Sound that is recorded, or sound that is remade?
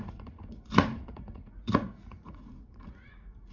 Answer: remade